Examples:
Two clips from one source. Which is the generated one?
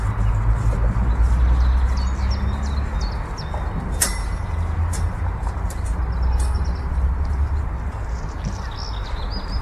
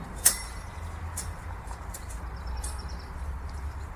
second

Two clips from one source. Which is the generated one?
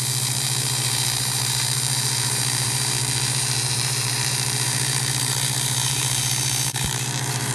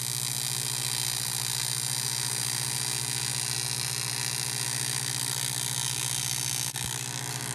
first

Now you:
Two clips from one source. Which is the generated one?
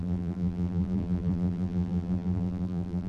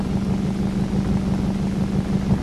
first